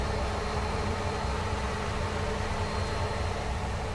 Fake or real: real